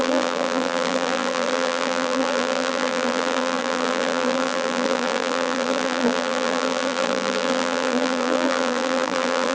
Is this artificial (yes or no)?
yes